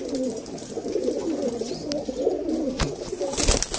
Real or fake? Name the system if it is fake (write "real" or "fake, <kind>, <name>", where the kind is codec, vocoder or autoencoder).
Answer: real